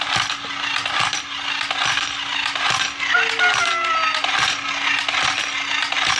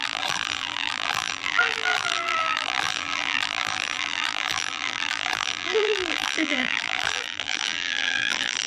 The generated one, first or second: second